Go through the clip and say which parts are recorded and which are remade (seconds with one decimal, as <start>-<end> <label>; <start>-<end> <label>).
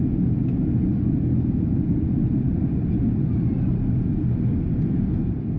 0.0-5.6 recorded